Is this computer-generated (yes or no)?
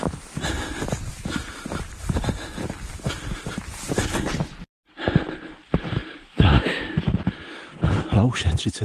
yes